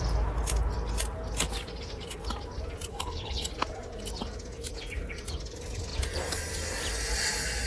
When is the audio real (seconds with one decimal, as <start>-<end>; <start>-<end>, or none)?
0.0-2.9; 3.5-7.7